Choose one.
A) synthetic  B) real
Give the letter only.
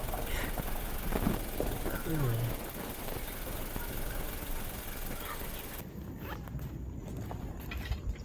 B